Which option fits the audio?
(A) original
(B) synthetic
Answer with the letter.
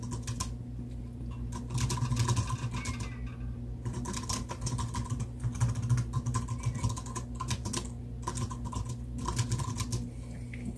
A